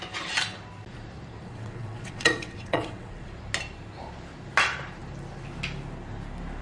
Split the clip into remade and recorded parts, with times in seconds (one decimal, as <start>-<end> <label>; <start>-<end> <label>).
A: 0.0-1.4 recorded; 1.4-3.3 remade; 3.3-6.6 recorded